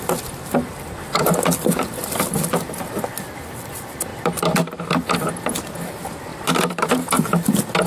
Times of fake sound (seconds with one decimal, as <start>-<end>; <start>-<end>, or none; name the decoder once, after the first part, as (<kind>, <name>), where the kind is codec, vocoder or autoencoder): 6.3-6.9 (vocoder, BigVGAN v2)